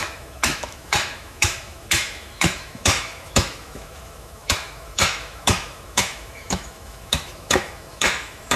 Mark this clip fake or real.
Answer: fake